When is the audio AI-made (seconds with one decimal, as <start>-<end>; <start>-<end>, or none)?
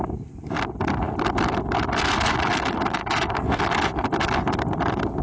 3.0-3.6